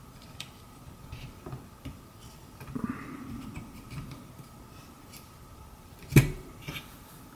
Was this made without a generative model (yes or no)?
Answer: no